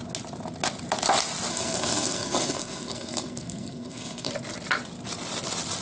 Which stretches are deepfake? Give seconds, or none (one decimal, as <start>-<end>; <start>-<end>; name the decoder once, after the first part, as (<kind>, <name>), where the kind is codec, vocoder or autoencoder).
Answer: 1.5-4.3 (codec, SNAC)